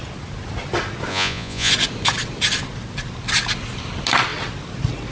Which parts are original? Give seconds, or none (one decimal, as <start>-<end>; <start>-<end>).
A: 0.0-1.1; 1.7-5.1